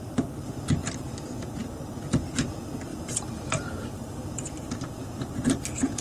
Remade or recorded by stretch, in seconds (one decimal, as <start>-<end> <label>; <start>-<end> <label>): 0.0-2.9 recorded; 2.9-4.7 remade; 4.7-6.0 recorded